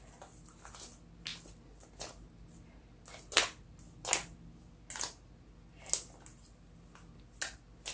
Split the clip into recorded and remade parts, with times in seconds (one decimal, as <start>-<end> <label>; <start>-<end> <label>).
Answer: 0.0-7.9 recorded